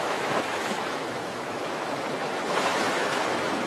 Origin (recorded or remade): remade